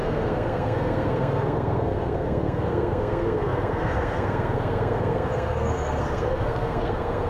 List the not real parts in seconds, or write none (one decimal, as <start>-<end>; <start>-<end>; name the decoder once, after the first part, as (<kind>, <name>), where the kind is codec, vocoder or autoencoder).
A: 0.0-7.3 (codec, SNAC)